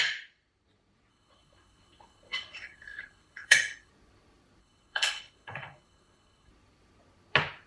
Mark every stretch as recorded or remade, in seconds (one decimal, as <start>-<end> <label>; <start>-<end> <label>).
0.0-1.1 recorded; 1.1-3.9 remade; 3.9-4.6 recorded; 4.6-6.5 remade; 6.5-7.7 recorded